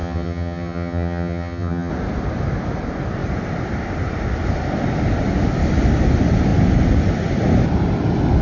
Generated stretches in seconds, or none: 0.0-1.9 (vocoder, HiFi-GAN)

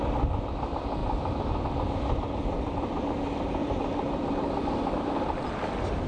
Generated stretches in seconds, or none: none

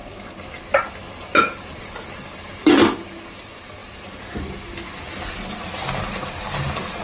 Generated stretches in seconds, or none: none